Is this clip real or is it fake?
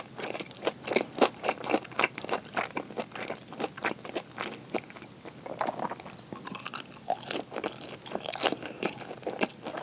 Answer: real